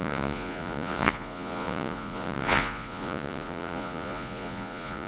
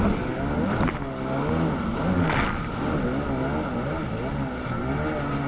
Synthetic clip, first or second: first